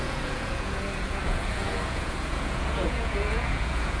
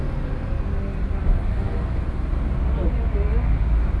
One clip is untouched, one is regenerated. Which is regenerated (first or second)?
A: first